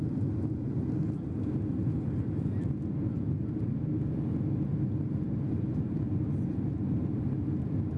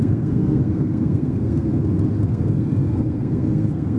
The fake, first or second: second